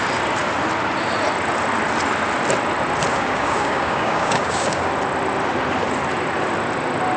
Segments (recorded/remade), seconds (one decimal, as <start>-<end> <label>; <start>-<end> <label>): 0.0-3.1 recorded; 3.1-4.9 remade; 4.9-7.2 recorded